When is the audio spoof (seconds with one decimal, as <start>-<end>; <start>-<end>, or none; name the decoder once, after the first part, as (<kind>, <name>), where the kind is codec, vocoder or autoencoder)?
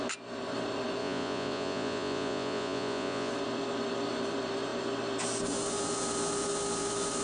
1.0-3.3 (vocoder, Vocos)